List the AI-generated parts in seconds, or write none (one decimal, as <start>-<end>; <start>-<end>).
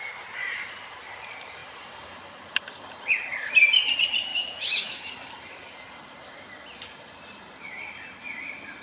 4.3-5.1